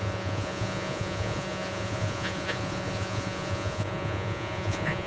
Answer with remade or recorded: remade